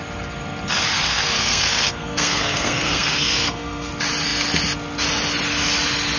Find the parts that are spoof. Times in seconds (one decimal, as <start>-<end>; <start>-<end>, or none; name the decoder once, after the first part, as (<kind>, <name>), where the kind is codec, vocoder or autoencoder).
0.9-3.9 (codec, SNAC)